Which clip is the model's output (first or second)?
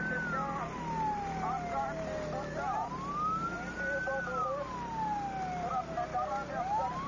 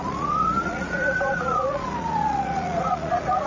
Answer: second